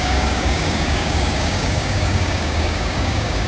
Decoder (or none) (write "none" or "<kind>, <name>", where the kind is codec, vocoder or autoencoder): codec, DAC